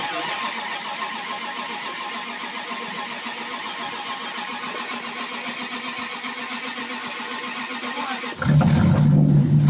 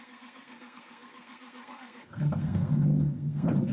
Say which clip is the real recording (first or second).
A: first